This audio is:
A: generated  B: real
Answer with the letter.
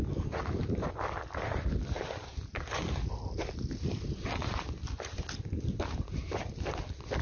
B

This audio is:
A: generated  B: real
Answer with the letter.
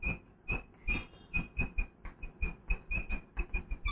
B